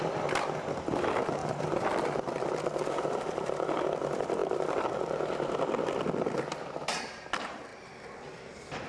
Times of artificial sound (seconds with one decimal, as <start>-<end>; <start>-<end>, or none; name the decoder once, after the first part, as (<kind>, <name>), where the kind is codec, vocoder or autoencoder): 1.4-2.5 (vocoder, BigVGAN v2); 4.4-5.9